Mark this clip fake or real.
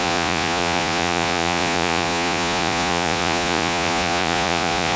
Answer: fake